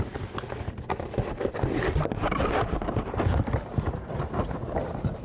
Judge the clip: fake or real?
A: real